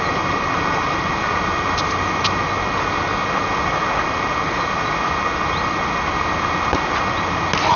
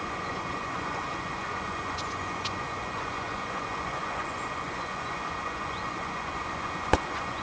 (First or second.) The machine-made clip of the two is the second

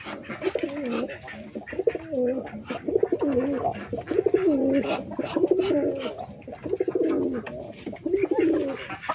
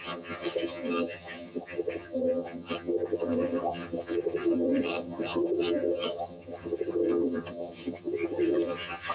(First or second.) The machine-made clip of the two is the second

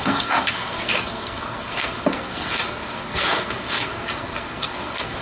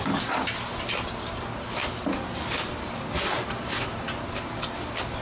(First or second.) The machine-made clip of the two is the first